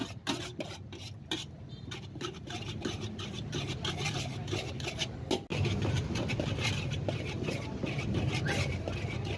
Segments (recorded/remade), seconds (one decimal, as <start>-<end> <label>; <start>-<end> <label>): 0.0-4.7 remade; 4.7-5.5 recorded; 5.5-8.0 remade; 8.0-9.4 recorded